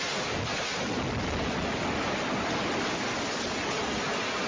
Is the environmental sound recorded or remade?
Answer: recorded